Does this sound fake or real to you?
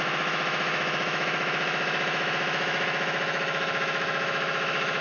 fake